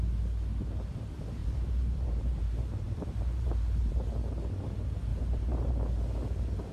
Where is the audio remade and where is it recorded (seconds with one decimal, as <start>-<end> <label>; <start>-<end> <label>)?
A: 0.0-1.4 recorded; 1.4-3.9 remade; 3.9-5.1 recorded; 5.1-5.7 remade; 5.7-6.7 recorded